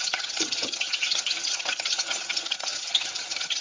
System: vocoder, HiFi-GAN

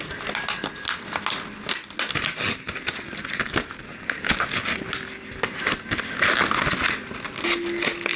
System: none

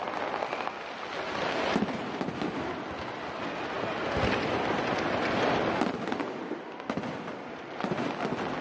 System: none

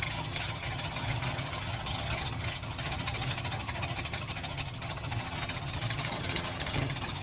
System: vocoder, HiFi-GAN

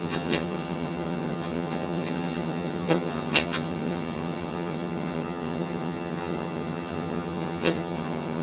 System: vocoder, HiFi-GAN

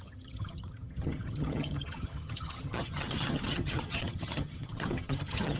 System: vocoder, HiFi-GAN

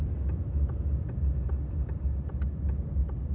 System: none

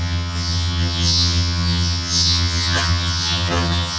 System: vocoder, HiFi-GAN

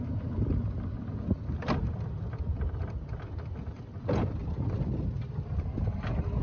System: none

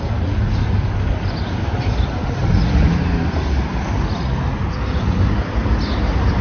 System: none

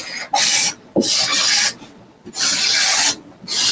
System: none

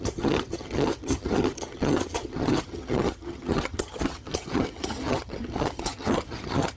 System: vocoder, HiFi-GAN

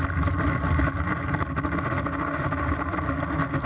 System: none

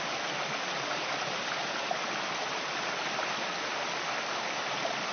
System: none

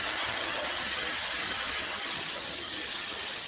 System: vocoder, HiFi-GAN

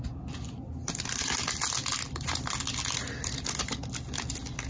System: none